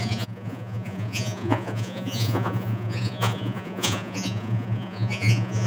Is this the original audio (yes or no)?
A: no